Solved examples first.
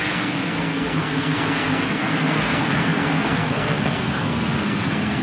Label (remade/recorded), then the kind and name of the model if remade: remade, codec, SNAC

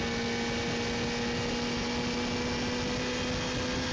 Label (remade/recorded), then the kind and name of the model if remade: recorded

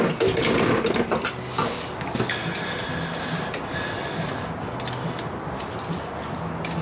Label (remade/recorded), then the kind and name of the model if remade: recorded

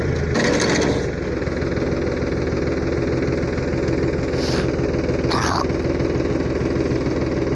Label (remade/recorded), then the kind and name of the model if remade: recorded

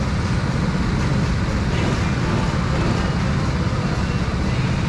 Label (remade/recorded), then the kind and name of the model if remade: recorded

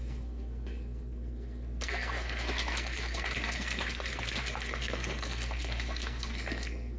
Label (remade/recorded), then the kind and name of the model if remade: remade, codec, SNAC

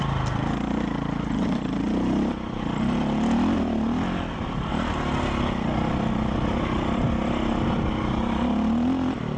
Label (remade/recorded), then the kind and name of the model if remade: recorded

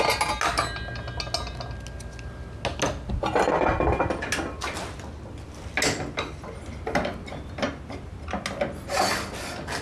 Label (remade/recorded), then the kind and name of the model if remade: recorded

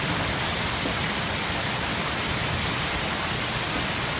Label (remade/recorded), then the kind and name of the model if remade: recorded